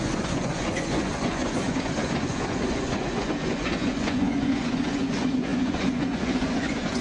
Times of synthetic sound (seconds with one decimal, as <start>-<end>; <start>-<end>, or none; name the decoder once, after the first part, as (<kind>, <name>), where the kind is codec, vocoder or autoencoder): 0.0-7.0 (vocoder, Vocos)